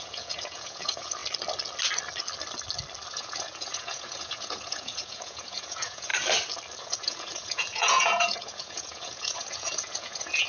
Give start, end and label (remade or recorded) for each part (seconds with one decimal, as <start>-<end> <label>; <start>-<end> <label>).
0.0-1.2 remade; 1.2-3.1 recorded; 3.1-6.1 remade; 6.1-6.8 recorded; 6.8-10.5 remade